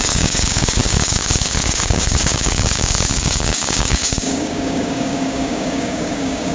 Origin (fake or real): fake